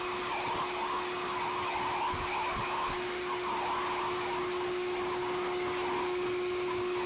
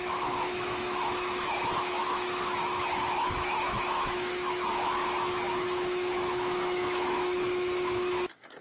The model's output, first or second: second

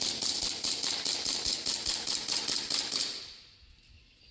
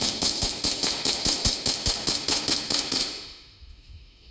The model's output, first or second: second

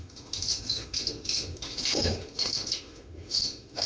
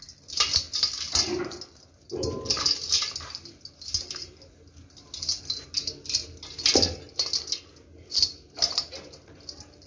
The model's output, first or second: first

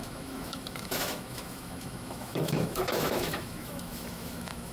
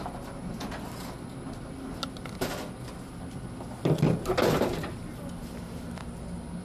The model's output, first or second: first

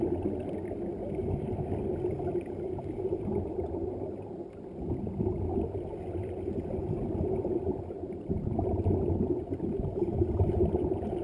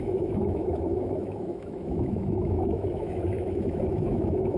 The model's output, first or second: second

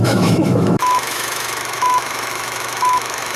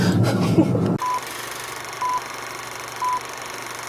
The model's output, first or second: first